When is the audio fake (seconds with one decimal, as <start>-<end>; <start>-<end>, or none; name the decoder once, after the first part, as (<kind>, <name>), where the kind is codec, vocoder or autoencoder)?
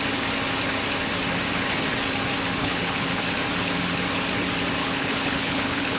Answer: 2.6-3.2 (codec, HILCodec); 4.8-6.0